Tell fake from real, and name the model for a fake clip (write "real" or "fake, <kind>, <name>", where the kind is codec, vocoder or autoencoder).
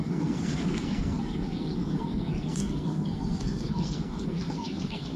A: fake, codec, SNAC